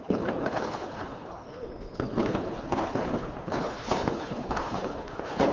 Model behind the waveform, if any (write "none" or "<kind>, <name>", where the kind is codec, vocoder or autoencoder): codec, HILCodec